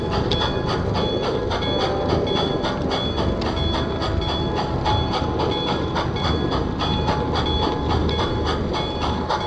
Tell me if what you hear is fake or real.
real